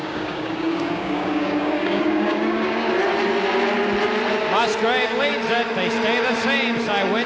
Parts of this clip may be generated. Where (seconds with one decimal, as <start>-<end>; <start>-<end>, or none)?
0.0-2.9